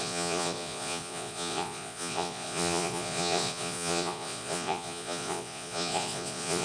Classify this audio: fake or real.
fake